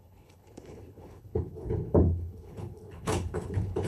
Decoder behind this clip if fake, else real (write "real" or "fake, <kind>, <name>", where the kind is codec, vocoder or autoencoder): fake, codec, HILCodec